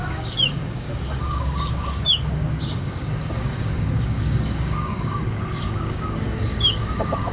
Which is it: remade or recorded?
remade